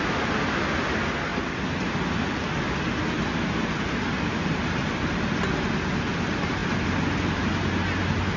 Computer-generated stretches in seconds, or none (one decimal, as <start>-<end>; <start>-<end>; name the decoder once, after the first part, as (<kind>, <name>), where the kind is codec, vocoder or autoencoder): none